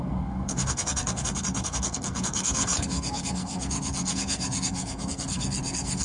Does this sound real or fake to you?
fake